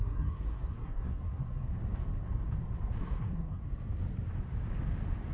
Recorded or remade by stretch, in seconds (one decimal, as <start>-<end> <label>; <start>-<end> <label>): 0.0-1.8 remade; 1.8-3.0 recorded; 3.0-3.6 remade; 3.6-5.3 recorded